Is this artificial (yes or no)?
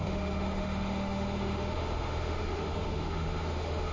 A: yes